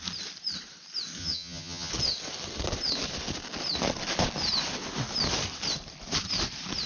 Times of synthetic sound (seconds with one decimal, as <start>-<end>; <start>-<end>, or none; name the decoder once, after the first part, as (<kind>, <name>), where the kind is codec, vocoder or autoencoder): 1.2-1.9 (vocoder, HiFi-GAN)